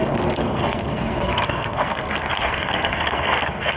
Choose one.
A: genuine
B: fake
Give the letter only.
B